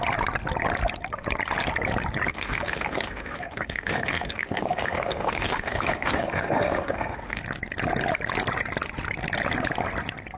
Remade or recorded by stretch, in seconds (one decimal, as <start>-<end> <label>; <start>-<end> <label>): 0.0-2.3 recorded; 2.3-7.4 remade; 7.4-10.4 recorded